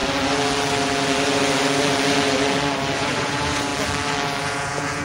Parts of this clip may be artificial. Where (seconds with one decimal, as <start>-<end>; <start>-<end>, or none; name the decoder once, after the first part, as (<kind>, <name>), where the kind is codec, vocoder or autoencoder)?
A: 3.0-3.7 (vocoder, Vocos); 4.4-5.0